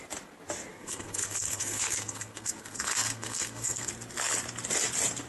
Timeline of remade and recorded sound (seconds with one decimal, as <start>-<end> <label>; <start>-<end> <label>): 0.0-0.7 recorded; 0.7-3.9 remade; 3.9-5.3 recorded